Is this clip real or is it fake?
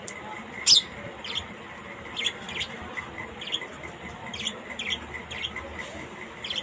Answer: real